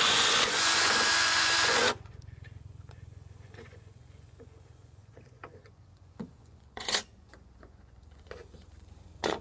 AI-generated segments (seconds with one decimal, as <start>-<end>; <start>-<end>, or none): 0.0-9.4